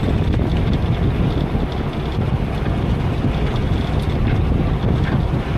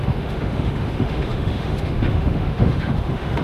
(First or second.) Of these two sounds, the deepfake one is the second